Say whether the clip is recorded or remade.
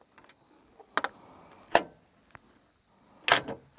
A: recorded